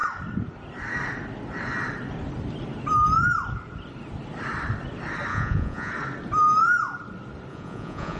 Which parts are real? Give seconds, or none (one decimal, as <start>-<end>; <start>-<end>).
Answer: 0.0-5.3; 5.9-7.5